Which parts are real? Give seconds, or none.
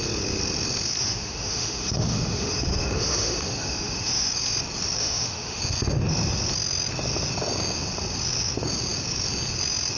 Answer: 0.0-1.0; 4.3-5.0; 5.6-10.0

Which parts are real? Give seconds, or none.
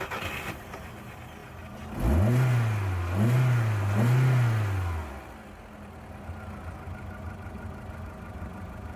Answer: 0.0-9.0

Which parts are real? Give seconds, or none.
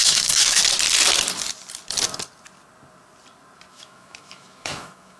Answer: 0.6-3.7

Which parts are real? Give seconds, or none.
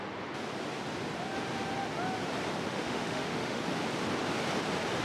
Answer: 0.0-2.7; 3.6-5.0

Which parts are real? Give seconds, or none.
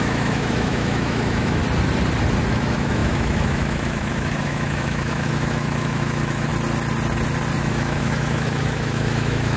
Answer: 1.6-2.5; 6.5-7.6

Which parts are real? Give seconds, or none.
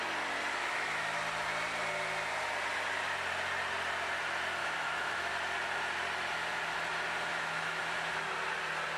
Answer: 0.0-0.6; 1.2-4.6; 5.3-7.3; 7.8-9.0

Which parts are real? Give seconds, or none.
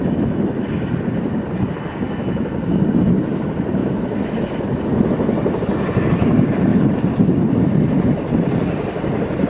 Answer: 0.0-3.8; 4.4-9.5